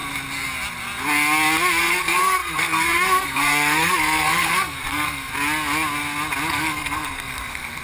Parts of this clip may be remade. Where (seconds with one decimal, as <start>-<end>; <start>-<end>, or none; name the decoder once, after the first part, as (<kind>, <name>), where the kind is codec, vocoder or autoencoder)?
1.8-5.3 (codec, SNAC); 6.5-7.8